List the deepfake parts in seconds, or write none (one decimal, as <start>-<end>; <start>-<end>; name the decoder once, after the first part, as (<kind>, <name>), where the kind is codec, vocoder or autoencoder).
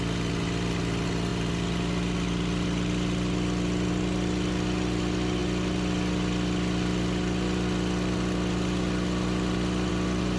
none